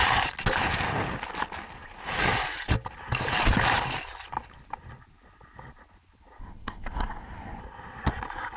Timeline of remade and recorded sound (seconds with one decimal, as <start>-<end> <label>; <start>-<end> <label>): 0.0-6.4 recorded; 6.4-7.6 remade; 7.6-8.6 recorded